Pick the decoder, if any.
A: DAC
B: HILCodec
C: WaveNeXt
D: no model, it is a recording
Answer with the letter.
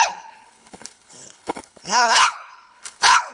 B